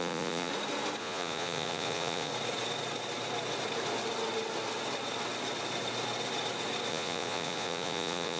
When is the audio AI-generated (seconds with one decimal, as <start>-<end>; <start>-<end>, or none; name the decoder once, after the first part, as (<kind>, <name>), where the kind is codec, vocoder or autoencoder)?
0.0-0.5 (vocoder, Vocos); 1.0-2.3; 6.9-8.4